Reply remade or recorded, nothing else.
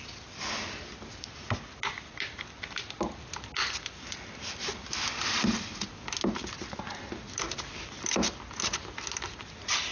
recorded